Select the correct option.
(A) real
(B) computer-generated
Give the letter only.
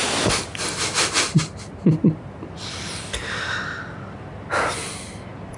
A